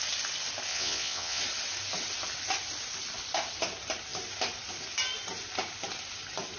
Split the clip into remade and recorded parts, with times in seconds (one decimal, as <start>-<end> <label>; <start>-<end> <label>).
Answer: 0.0-0.7 recorded; 0.7-1.4 remade; 1.4-6.6 recorded